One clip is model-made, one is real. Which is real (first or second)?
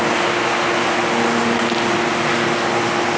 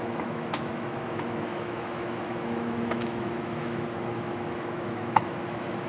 first